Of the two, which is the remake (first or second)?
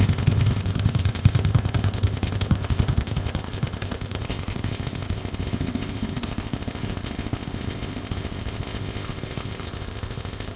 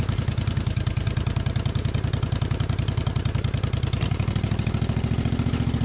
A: first